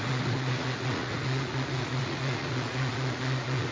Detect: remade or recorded remade